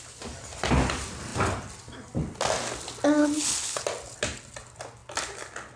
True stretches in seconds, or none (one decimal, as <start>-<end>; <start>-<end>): 0.0-3.2; 3.8-5.8